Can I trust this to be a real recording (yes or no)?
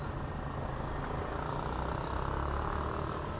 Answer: yes